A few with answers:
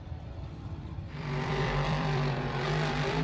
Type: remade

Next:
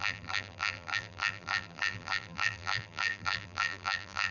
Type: remade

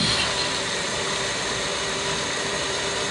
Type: remade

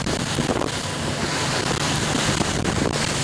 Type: remade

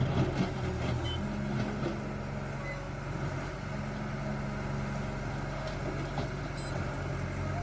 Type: recorded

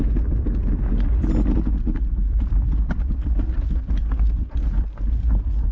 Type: recorded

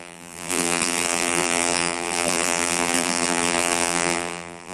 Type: remade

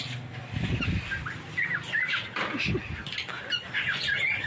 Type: recorded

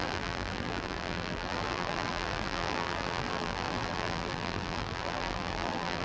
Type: remade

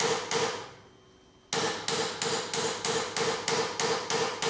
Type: recorded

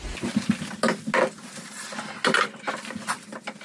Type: recorded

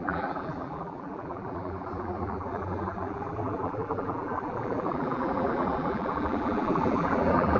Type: remade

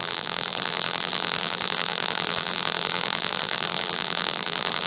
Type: remade